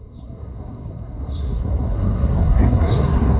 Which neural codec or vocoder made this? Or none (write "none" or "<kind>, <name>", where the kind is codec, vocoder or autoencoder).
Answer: codec, SNAC